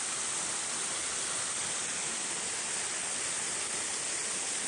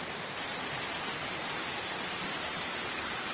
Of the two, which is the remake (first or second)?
second